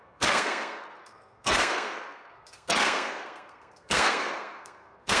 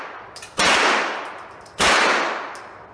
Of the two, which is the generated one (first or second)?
first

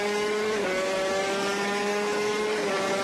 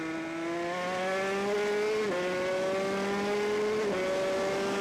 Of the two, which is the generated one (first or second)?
first